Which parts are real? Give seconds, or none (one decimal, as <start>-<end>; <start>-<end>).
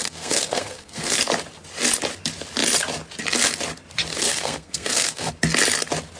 1.2-4.1; 5.3-6.2